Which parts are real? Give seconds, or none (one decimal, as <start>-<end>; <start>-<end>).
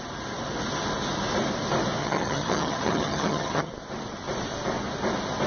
0.0-2.0; 3.7-5.5